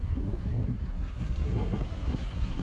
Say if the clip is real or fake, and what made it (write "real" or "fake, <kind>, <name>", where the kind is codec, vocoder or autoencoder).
fake, codec, SNAC